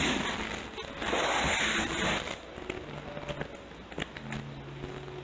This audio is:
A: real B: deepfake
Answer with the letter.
A